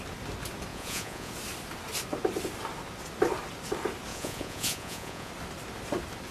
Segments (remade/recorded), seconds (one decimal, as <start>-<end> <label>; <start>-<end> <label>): 0.0-0.7 recorded; 0.7-1.3 remade; 1.3-4.1 recorded; 4.1-5.3 remade; 5.3-6.3 recorded